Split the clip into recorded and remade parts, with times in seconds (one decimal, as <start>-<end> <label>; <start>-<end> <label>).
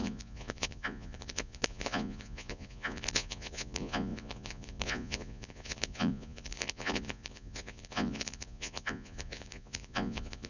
0.0-10.5 remade